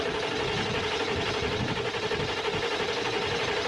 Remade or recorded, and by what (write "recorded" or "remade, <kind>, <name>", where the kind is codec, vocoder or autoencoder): recorded